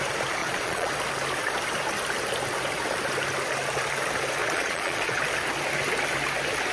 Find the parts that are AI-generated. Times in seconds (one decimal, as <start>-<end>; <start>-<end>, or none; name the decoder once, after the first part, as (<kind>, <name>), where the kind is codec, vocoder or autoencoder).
0.4-0.9 (vocoder, Vocos); 4.4-5.2